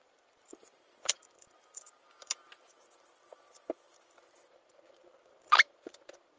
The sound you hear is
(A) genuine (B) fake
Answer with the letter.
B